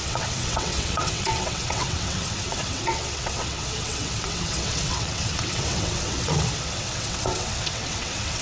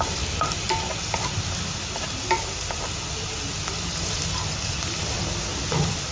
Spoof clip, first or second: first